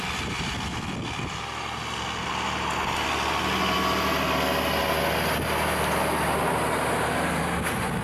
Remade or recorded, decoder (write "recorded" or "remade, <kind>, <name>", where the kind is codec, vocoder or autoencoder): recorded